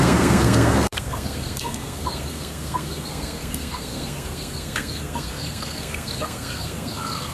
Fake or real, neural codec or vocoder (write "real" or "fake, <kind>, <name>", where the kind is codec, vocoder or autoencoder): fake, codec, SNAC